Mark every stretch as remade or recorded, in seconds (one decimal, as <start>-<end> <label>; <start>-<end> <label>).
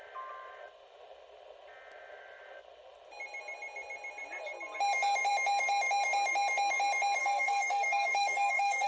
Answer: 0.0-7.2 recorded; 7.2-8.9 remade